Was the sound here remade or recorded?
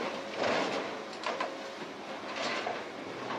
recorded